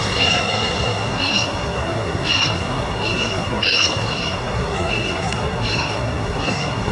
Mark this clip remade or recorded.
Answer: remade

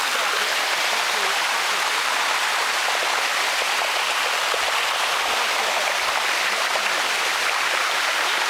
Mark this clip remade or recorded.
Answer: recorded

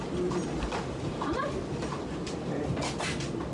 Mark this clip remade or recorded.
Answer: recorded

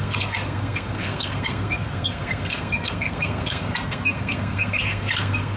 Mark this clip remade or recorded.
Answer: remade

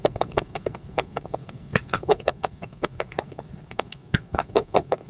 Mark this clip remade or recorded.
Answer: remade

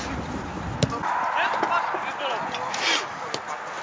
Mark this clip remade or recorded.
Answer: recorded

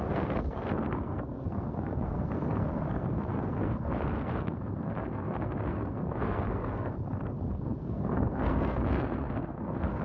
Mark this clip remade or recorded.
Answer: remade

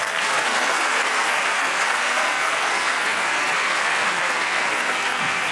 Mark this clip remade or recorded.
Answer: remade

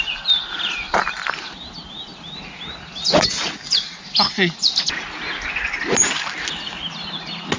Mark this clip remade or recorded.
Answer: recorded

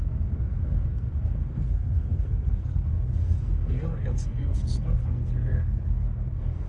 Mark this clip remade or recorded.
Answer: remade